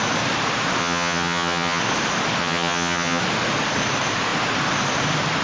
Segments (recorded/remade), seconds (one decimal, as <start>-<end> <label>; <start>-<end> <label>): 0.0-0.8 recorded; 0.8-1.8 remade; 1.8-2.4 recorded; 2.4-3.2 remade; 3.2-5.4 recorded